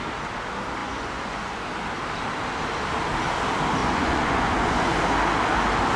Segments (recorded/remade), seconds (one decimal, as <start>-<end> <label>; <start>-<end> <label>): 0.0-0.8 recorded; 0.8-1.7 remade; 1.7-3.8 recorded; 3.8-5.0 remade; 5.0-6.0 recorded